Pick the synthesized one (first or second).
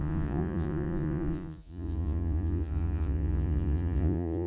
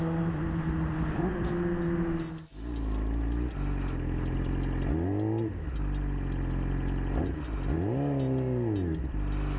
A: first